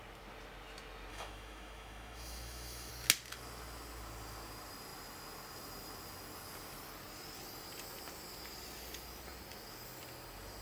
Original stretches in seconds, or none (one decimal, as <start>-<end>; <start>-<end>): 0.0-1.1; 2.9-10.6